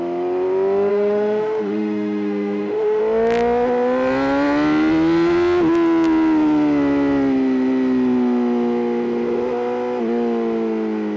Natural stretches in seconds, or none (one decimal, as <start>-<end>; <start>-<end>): 0.0-0.9; 3.0-11.2